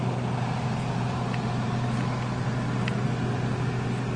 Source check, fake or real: real